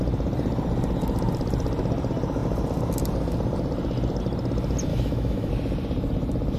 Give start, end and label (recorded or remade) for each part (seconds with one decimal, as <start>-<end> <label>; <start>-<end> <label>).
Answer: 0.0-4.9 recorded; 4.9-5.5 remade; 5.5-6.6 recorded